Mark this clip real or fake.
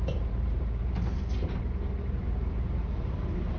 fake